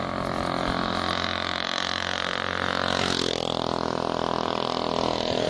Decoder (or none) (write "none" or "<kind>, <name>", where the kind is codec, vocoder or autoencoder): none